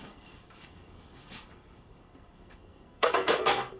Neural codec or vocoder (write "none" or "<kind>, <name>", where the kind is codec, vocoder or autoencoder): codec, SNAC